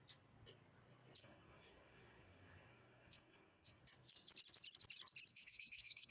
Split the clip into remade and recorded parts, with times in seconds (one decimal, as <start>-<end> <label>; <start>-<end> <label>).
0.0-1.2 recorded; 1.2-3.8 remade; 3.8-5.3 recorded; 5.3-6.1 remade